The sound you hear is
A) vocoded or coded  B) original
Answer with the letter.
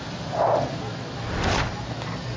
B